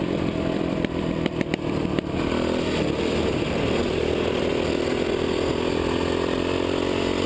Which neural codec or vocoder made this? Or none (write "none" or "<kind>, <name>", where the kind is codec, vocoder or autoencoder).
none